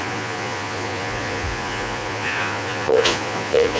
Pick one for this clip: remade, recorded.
remade